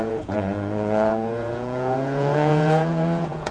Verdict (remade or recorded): remade